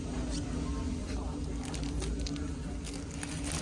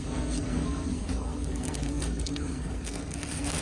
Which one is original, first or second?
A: first